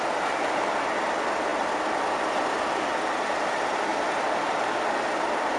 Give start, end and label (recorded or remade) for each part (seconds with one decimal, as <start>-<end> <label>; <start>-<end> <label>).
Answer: 0.0-5.6 recorded